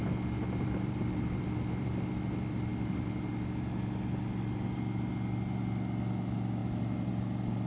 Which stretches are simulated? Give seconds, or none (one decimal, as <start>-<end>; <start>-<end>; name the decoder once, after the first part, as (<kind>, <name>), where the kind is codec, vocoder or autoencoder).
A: none